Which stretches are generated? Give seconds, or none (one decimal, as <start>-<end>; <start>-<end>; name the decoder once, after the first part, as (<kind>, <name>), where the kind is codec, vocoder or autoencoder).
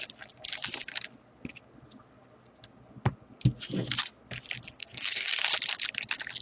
4.8-5.4 (codec, SNAC)